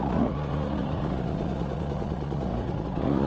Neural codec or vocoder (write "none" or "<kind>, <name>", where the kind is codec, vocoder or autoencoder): vocoder, Vocos